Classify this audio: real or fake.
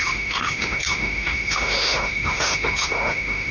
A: fake